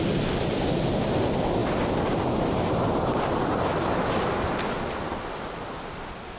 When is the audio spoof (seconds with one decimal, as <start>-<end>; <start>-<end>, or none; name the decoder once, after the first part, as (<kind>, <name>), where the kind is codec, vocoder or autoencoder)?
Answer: none